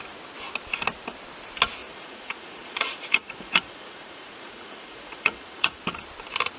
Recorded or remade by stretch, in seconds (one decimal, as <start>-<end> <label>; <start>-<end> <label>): 0.0-1.8 recorded; 1.8-5.8 remade; 5.8-6.6 recorded